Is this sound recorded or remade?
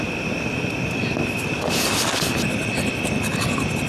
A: recorded